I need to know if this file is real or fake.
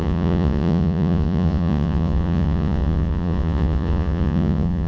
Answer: fake